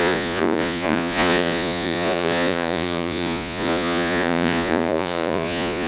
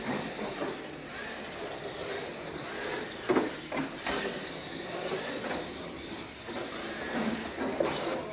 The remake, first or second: first